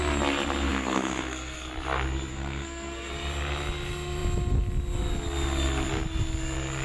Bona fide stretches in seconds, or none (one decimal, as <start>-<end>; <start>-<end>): 0.0-0.7; 1.7-2.3; 3.1-6.8